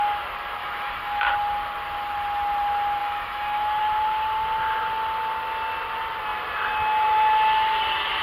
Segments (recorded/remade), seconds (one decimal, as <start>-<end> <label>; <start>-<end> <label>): 0.0-0.6 recorded; 0.6-1.3 remade; 1.3-3.0 recorded; 3.0-3.8 remade; 3.8-8.2 recorded